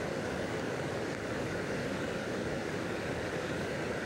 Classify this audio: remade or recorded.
remade